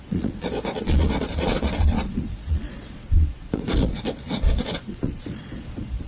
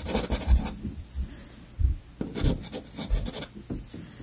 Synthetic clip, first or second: first